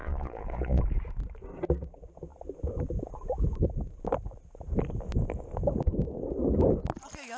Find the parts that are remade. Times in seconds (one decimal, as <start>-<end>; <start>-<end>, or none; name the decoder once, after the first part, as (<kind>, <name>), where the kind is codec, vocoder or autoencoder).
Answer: 0.0-0.8 (vocoder, Vocos)